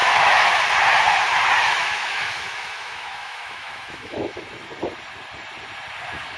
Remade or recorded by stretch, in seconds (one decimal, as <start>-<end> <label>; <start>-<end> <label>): 0.0-0.6 remade; 0.6-1.8 recorded; 1.8-4.4 remade; 4.4-6.4 recorded